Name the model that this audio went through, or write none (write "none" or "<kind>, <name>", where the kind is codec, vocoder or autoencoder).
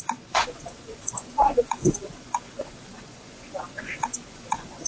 vocoder, Vocos